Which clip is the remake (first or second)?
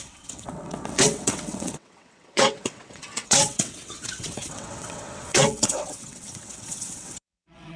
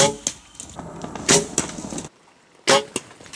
first